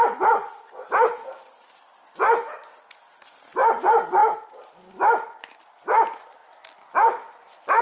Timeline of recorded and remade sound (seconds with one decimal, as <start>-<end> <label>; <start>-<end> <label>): 0.0-7.8 recorded